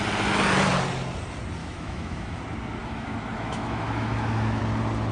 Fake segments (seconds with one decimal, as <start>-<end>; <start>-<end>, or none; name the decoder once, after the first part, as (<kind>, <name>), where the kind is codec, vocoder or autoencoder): 1.6-2.4 (autoencoder, DAC-VAE); 2.8-4.6